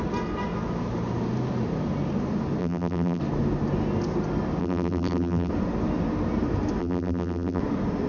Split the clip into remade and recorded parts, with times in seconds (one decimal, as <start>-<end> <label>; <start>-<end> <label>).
0.0-2.6 recorded; 2.6-3.2 remade; 3.2-4.6 recorded; 4.6-5.5 remade; 5.5-6.8 recorded; 6.8-7.6 remade; 7.6-8.1 recorded